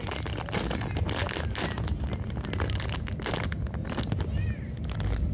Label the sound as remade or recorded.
recorded